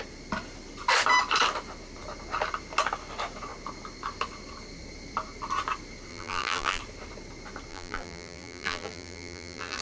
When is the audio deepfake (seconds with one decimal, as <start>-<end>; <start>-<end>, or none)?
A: 6.1-6.8; 7.7-9.8

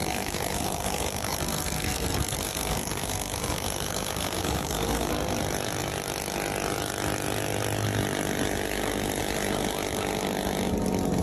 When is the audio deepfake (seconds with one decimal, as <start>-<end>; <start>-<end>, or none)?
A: 0.0-5.1

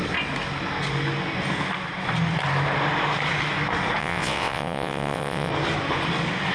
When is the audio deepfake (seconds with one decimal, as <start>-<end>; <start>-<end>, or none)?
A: 4.0-5.5

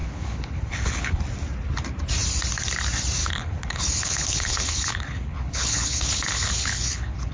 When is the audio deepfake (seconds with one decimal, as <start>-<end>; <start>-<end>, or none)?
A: 0.0-1.2; 3.2-7.3

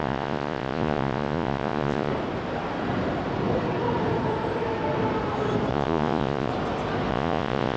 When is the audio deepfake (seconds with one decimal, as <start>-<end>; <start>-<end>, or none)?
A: 0.0-2.1; 5.7-6.5; 7.1-7.8